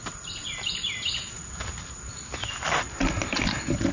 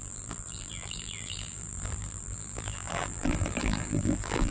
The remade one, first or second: second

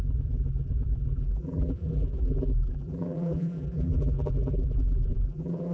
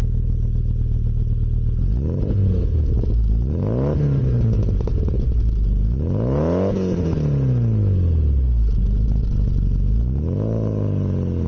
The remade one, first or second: first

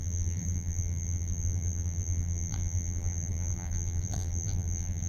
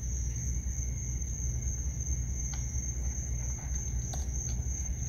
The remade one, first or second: first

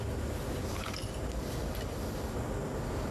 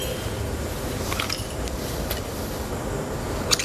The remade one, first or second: second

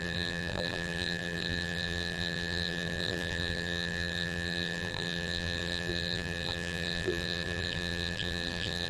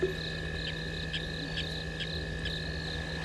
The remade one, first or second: first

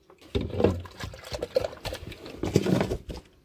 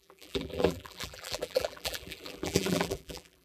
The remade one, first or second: second